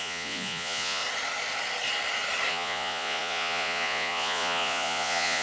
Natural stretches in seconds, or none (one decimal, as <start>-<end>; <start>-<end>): 1.0-2.5